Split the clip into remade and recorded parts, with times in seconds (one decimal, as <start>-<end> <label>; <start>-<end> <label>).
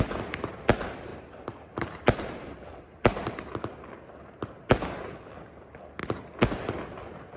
0.0-1.1 recorded; 1.1-3.4 remade; 3.4-7.4 recorded